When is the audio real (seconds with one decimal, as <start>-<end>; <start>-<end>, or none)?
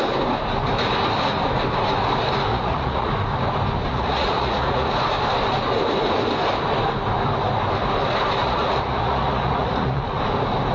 0.0-2.5; 3.1-3.9; 4.9-8.4; 10.2-10.7